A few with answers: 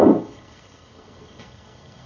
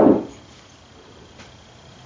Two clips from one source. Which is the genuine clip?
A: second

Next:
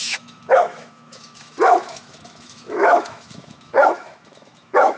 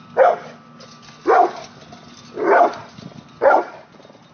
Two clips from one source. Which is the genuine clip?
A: second